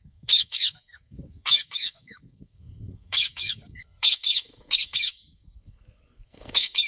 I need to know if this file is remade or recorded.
remade